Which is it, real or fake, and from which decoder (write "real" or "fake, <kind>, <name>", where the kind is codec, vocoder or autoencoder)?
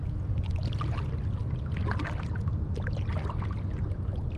real